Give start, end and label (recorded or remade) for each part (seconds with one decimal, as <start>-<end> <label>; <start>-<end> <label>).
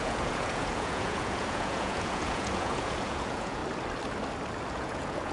0.0-3.6 remade; 3.6-4.7 recorded; 4.7-5.3 remade